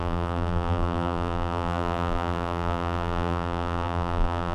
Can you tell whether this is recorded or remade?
remade